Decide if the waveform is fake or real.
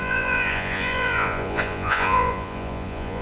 fake